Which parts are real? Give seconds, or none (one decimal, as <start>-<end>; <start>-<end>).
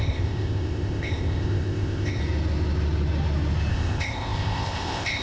2.2-3.7